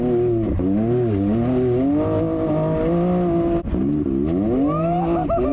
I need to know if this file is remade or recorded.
recorded